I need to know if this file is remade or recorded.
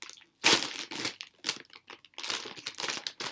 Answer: recorded